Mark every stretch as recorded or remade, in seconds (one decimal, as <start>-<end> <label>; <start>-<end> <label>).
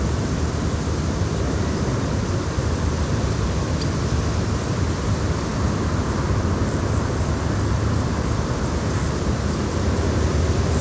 0.0-1.9 recorded; 1.9-4.1 remade; 4.1-10.8 recorded